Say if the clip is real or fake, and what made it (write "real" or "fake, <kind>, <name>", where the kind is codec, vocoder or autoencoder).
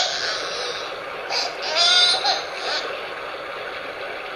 real